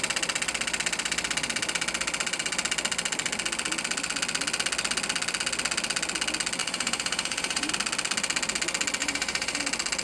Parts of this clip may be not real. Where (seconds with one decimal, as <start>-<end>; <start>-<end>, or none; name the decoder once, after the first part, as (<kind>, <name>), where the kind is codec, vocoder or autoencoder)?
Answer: 6.6-7.7 (vocoder, Vocos); 9.0-9.6